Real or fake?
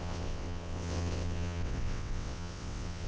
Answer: fake